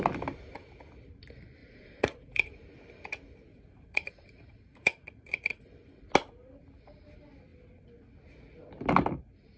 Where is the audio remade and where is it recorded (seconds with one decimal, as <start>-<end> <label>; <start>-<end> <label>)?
0.0-1.6 recorded; 1.6-2.5 remade; 2.5-3.5 recorded; 3.5-5.6 remade; 5.6-9.6 recorded